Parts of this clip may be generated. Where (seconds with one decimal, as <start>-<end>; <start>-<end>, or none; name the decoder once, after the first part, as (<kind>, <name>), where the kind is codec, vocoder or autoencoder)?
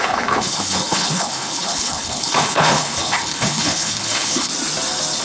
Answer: 0.0-4.5 (codec, HILCodec)